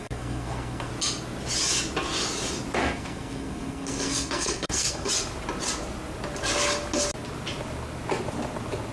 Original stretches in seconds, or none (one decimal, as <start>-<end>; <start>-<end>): 0.9-2.8; 5.1-8.9